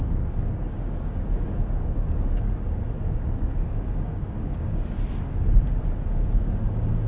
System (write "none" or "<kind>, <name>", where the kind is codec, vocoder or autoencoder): codec, DAC